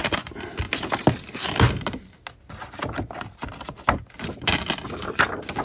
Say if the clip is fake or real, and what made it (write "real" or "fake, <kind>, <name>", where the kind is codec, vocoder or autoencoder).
real